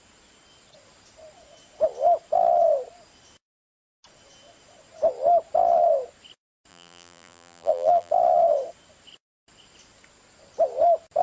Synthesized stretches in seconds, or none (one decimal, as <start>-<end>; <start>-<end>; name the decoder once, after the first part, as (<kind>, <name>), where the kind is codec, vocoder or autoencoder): 6.7-8.1 (vocoder, BigVGAN v2)